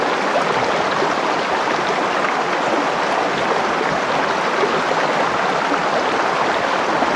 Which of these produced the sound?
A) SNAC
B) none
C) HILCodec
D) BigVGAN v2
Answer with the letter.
B